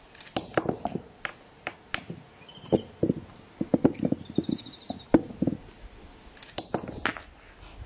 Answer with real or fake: real